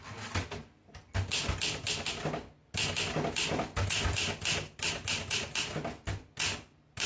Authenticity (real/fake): real